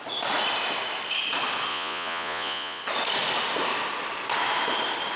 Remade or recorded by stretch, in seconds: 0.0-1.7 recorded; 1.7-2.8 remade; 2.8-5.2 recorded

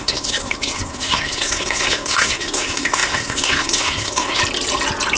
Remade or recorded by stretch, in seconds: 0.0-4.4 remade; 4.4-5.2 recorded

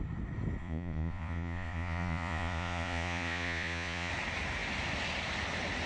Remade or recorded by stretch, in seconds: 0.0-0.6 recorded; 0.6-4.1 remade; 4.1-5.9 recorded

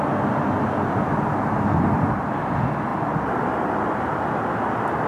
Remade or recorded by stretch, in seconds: 0.0-5.1 recorded